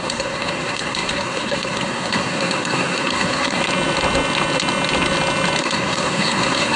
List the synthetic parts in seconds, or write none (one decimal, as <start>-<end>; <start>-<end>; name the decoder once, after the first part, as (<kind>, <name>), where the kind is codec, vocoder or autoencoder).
0.0-3.6 (codec, SNAC); 5.6-6.8